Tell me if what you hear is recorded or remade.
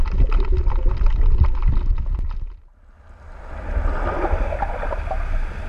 recorded